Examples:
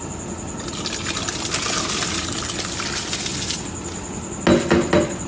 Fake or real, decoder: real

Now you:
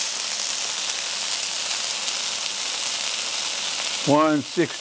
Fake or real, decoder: real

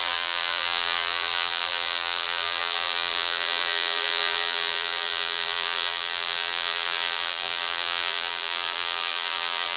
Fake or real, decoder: fake, vocoder, BigVGAN v2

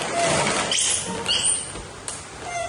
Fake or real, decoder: real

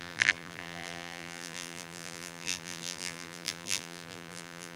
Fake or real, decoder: fake, vocoder, BigVGAN v2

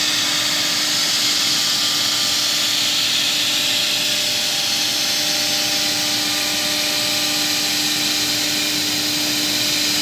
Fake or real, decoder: real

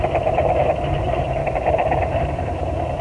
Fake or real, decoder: fake, vocoder, BigVGAN v2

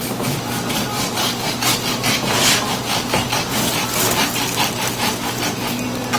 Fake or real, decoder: real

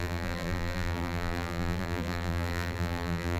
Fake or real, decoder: fake, vocoder, BigVGAN v2